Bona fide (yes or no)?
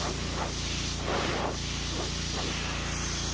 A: yes